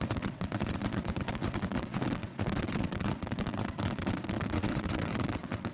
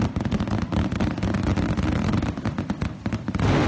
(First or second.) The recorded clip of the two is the second